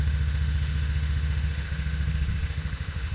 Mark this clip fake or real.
fake